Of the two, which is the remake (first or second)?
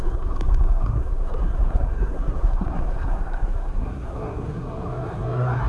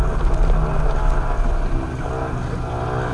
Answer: first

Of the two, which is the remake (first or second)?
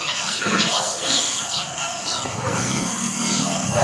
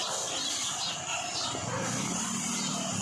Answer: first